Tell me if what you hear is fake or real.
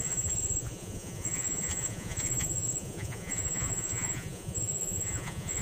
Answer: fake